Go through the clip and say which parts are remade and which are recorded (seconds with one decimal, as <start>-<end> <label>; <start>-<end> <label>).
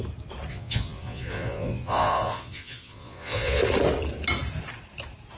0.0-0.5 recorded; 0.5-3.6 remade; 3.6-5.4 recorded